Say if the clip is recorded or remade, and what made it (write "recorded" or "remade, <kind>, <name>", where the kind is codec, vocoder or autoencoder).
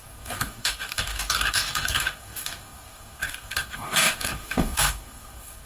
remade, codec, DAC